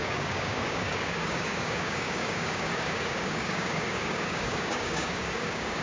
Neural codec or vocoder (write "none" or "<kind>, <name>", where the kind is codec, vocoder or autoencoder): codec, DAC